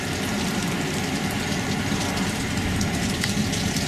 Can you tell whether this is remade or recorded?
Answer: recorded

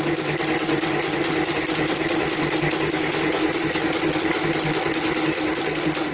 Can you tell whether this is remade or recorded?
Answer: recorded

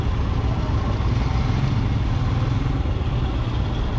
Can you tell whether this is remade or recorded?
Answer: recorded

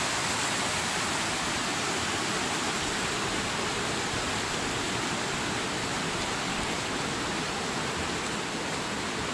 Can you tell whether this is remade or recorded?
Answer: recorded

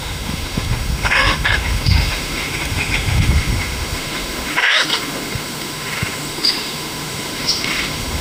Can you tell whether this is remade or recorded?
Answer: remade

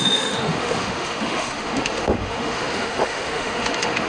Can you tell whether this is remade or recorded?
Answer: remade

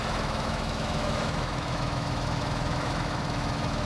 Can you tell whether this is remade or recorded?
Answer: remade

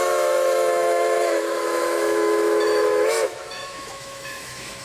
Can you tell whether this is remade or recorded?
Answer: remade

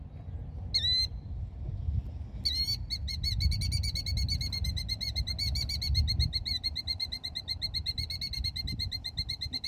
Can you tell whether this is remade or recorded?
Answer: recorded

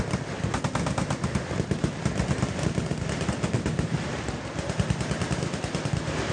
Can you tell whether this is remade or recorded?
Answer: recorded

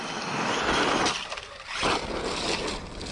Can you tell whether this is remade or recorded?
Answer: recorded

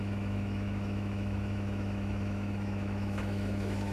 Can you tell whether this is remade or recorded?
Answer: remade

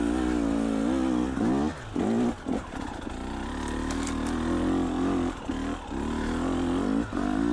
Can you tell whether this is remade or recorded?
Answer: recorded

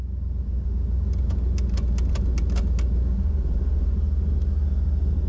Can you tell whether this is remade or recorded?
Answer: recorded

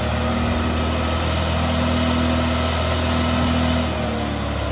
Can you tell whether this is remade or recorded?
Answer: recorded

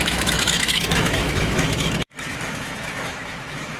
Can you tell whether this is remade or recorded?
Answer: remade